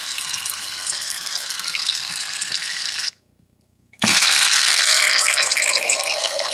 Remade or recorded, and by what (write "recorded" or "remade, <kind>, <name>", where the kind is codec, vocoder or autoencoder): remade, codec, SNAC